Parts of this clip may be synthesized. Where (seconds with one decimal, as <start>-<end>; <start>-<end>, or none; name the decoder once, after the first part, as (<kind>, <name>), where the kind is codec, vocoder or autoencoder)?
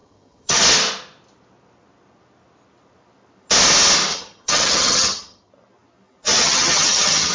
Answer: 0.0-0.6 (vocoder, HiFi-GAN); 4.1-5.5; 6.4-7.3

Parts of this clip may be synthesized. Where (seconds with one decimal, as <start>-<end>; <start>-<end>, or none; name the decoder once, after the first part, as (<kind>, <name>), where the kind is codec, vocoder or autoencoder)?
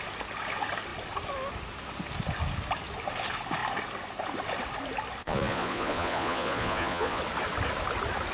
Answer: 5.2-7.2 (vocoder, Vocos)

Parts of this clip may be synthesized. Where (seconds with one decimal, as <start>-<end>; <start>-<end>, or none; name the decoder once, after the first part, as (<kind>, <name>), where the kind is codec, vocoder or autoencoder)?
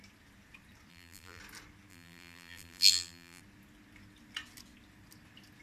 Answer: 0.9-1.4 (vocoder, BigVGAN v2); 1.9-3.4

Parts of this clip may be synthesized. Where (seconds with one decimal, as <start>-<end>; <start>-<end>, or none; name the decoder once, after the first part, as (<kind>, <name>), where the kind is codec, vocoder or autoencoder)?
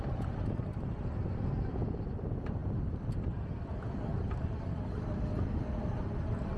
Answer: none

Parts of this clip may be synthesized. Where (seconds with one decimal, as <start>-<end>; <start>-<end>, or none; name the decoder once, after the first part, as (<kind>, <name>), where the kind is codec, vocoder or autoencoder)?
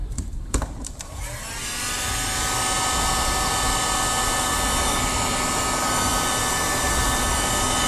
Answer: 0.0-1.2 (vocoder, BigVGAN v2)